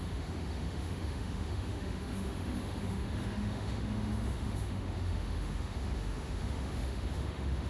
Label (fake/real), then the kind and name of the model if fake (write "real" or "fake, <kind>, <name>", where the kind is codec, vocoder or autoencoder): fake, autoencoder, DAC-VAE